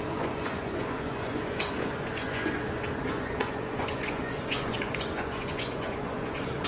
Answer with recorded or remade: remade